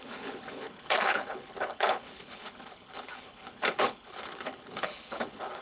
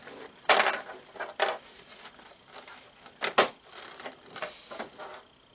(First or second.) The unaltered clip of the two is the second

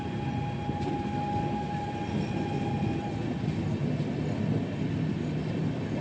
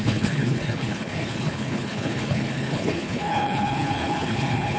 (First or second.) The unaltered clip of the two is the first